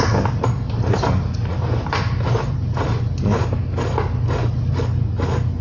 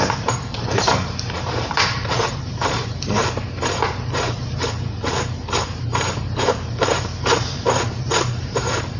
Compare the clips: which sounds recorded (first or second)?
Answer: first